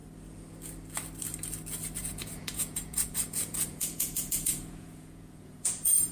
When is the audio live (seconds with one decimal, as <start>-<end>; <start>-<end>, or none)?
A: 0.0-2.0